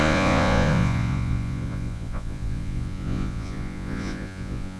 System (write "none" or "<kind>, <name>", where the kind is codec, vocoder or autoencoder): vocoder, Vocos